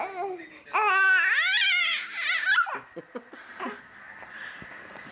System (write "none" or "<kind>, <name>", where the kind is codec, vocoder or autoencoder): none